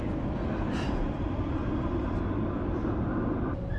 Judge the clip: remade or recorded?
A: recorded